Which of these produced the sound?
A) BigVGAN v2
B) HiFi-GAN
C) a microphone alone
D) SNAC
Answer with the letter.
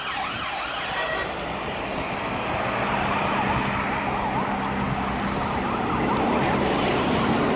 C